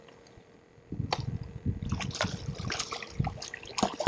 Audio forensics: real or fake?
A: real